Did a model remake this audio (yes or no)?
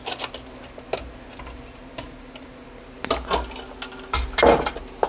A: no